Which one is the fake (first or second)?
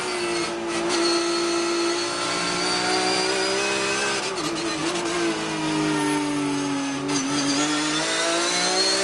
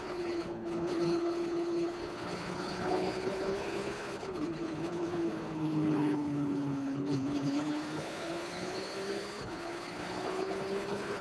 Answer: second